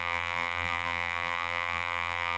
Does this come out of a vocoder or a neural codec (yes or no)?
yes